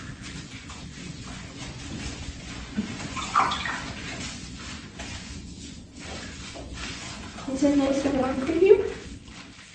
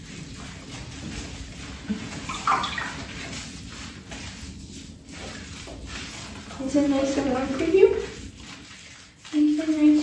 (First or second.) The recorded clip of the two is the second